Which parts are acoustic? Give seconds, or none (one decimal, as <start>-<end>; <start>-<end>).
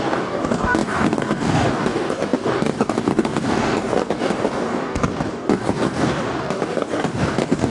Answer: none